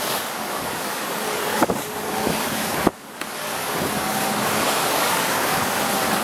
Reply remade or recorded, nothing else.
remade